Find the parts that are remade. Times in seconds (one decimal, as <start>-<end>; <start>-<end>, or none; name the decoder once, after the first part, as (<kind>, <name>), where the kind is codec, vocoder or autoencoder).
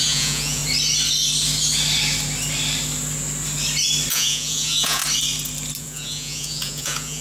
0.0-0.6 (vocoder, Vocos); 4.1-5.0; 5.8-7.2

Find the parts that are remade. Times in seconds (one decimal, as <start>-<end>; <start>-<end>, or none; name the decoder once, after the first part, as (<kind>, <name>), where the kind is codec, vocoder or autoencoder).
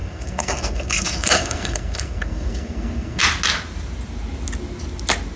0.0-3.2 (codec, SNAC)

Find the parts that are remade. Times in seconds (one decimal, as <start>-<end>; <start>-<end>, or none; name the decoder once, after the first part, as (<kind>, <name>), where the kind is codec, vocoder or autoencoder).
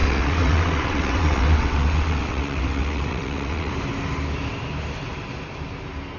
0.0-3.7 (vocoder, WaveNeXt)